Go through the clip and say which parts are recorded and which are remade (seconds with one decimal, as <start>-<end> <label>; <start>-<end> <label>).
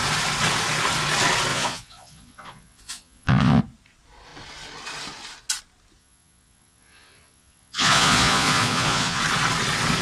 0.0-1.5 recorded; 1.5-3.6 remade; 3.6-6.0 recorded; 6.0-9.2 remade; 9.2-10.0 recorded